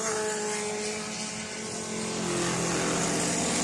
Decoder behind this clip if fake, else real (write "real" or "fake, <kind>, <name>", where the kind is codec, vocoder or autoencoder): real